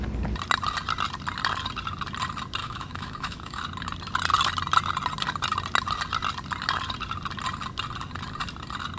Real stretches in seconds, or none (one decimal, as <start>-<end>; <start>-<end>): 0.0-2.6; 3.6-9.0